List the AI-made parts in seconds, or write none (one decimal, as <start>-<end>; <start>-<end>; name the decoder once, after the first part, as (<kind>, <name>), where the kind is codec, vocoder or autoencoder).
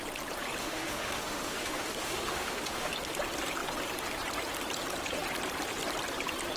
0.6-2.9 (autoencoder, DAC-VAE)